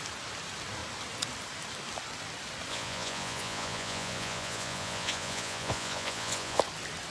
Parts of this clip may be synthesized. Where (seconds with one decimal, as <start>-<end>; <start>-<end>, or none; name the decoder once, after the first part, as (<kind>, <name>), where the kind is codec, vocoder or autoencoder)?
2.7-6.6 (vocoder, Vocos)